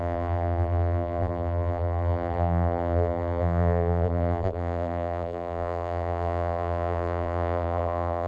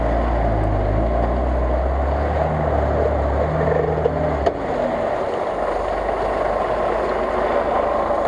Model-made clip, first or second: first